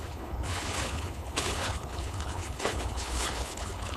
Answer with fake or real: fake